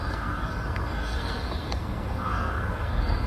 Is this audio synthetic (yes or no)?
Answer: yes